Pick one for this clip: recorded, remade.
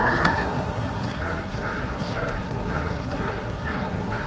remade